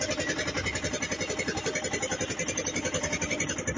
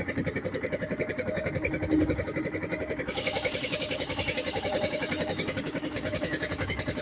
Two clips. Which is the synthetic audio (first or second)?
second